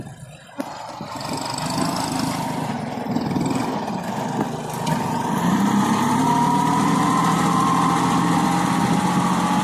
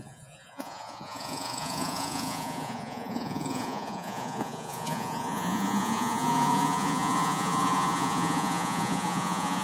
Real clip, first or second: first